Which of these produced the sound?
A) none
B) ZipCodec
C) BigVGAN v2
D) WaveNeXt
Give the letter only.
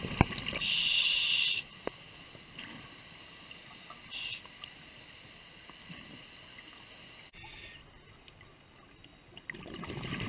A